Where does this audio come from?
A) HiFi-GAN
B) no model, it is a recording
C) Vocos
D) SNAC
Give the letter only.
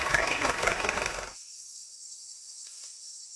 D